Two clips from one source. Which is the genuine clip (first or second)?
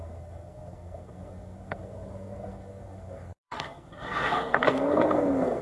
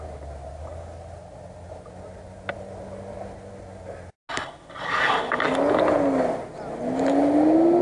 second